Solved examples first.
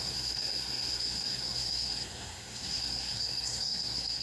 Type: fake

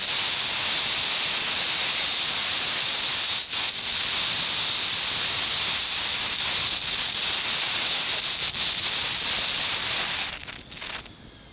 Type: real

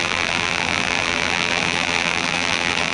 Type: fake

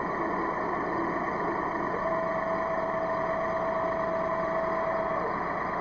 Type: real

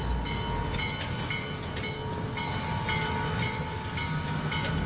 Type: real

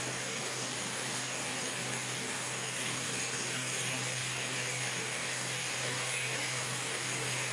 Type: fake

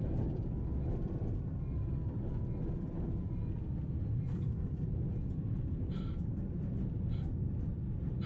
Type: real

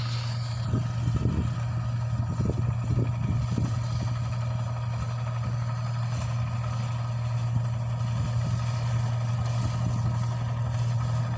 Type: real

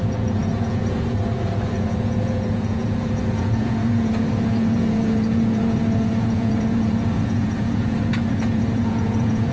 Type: fake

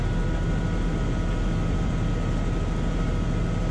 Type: real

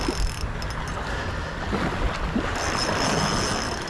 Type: real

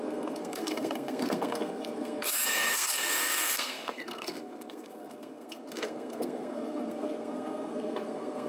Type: fake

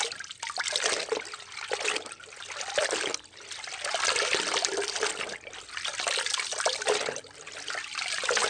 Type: real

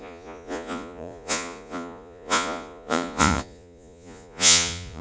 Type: fake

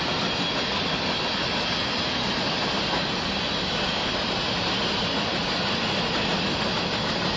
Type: real